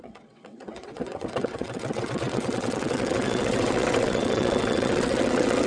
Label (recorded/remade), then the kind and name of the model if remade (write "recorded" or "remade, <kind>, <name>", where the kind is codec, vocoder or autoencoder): remade, vocoder, WaveNeXt